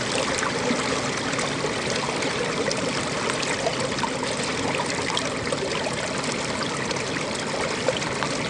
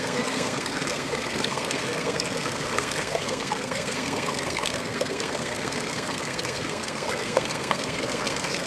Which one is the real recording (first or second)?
first